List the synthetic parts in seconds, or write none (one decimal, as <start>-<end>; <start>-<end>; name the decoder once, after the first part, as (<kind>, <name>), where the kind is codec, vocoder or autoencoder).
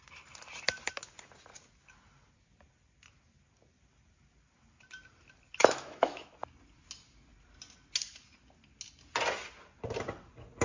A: 5.6-6.3 (autoencoder, DAC-VAE)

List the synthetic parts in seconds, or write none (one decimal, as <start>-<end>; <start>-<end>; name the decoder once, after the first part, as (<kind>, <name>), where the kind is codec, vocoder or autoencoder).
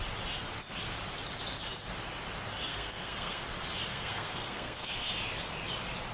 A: 2.7-3.4 (codec, SNAC); 3.9-5.1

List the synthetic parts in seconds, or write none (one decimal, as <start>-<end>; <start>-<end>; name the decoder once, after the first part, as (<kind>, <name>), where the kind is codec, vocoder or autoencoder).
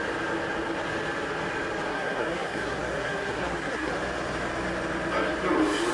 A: 1.9-3.9 (codec, SNAC)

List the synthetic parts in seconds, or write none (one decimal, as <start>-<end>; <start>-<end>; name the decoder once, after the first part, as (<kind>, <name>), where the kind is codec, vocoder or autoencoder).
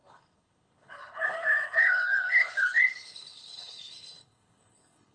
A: 0.0-5.1 (codec, HILCodec)